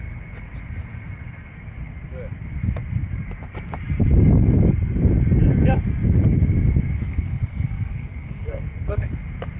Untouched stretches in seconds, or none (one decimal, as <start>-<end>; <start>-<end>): 0.0-7.1; 9.1-9.6